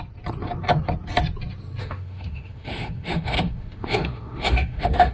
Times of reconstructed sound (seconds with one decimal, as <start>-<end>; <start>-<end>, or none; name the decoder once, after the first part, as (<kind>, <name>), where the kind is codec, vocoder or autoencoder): 1.8-5.1 (autoencoder, DAC-VAE)